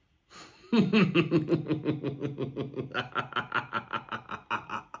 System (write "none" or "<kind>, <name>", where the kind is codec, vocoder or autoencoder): none